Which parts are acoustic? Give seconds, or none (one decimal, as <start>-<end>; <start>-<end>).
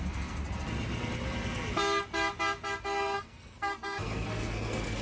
0.4-2.8